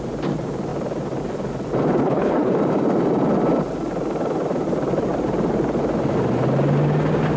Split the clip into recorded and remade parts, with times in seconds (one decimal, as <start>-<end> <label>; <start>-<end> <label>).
0.0-2.0 recorded; 2.0-2.5 remade; 2.5-7.4 recorded